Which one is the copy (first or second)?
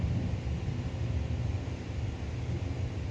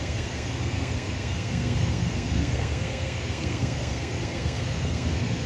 second